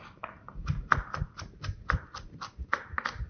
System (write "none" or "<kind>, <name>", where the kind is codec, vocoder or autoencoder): none